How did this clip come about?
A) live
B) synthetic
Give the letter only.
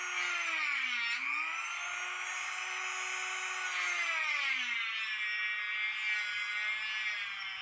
A